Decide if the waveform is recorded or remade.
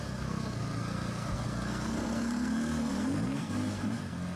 remade